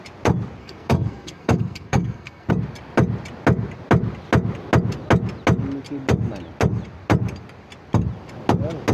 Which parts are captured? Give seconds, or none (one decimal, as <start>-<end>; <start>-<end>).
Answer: 0.0-0.6; 2.5-8.9